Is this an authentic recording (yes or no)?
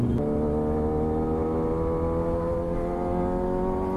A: yes